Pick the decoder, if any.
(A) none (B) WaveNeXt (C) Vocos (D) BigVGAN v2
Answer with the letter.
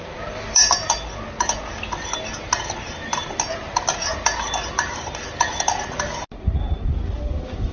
A